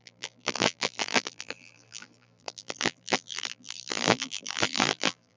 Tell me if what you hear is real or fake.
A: fake